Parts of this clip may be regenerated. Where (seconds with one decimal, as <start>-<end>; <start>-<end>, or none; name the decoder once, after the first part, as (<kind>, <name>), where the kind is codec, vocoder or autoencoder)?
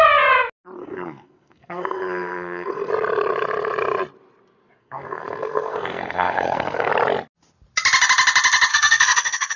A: 0.8-2.9 (codec, SNAC); 4.8-6.9; 8.7-9.6